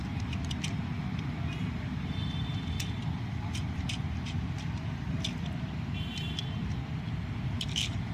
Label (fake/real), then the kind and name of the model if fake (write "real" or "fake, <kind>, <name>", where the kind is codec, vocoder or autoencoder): real